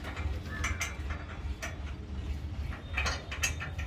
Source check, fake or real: real